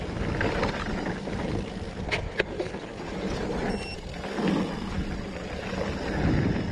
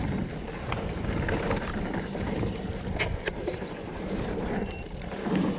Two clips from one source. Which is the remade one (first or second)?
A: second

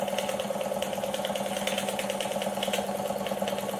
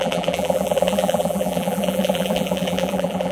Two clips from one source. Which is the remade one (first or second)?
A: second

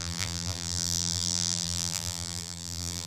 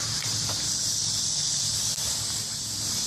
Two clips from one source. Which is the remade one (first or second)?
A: first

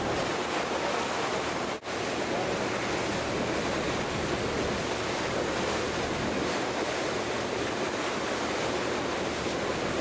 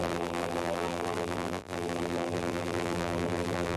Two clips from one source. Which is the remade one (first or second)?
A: second